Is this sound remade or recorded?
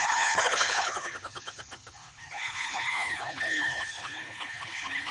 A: remade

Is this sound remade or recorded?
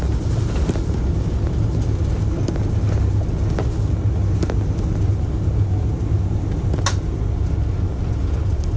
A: recorded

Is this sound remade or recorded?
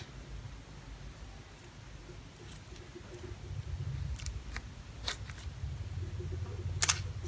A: recorded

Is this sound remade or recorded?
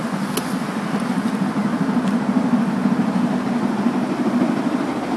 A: recorded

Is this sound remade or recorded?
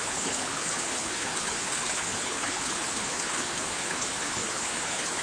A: remade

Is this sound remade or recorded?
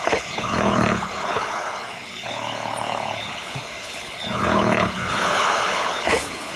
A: remade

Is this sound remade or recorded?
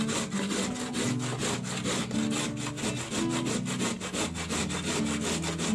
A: recorded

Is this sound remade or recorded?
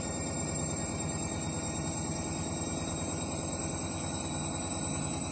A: recorded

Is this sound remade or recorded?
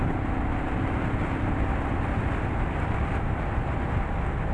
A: recorded